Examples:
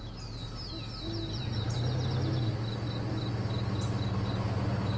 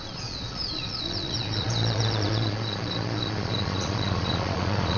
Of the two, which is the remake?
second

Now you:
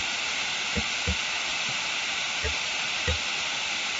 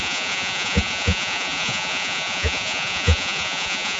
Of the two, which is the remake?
second